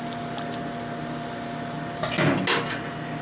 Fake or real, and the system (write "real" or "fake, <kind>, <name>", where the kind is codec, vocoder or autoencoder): real